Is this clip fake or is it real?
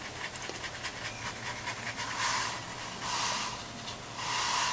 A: real